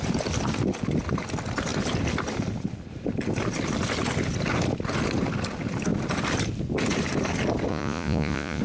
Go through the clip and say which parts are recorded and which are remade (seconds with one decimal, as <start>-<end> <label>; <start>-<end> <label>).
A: 0.0-7.7 recorded; 7.7-8.6 remade